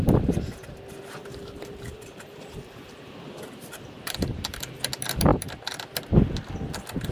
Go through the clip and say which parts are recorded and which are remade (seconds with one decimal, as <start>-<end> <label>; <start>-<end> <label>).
0.0-1.2 recorded; 1.2-4.8 remade; 4.8-7.1 recorded